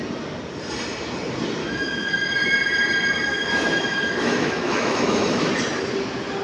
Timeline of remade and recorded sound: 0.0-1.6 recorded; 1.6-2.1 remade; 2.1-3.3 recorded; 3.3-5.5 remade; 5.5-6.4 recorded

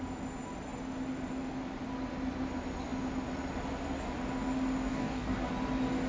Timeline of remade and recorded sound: 0.0-4.9 recorded; 4.9-5.5 remade; 5.5-6.1 recorded

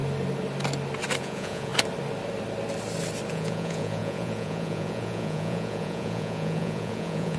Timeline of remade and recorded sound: 0.0-1.2 recorded; 1.2-1.7 remade; 1.7-3.3 recorded; 3.3-7.4 remade

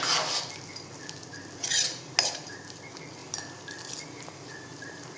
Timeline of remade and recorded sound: 0.0-5.2 recorded